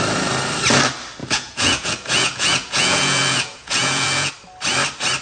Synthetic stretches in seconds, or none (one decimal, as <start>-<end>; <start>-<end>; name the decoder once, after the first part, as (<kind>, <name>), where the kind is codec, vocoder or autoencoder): 1.2-4.3 (vocoder, Vocos)